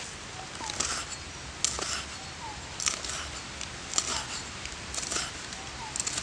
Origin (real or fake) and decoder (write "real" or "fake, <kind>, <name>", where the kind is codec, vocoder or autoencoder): real